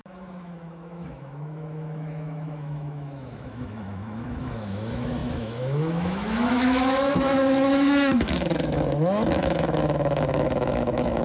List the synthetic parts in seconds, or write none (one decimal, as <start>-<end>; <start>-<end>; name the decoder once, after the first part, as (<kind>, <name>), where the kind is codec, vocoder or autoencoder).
0.0-11.2 (autoencoder, DAC-VAE)